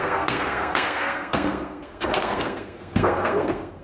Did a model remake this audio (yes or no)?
yes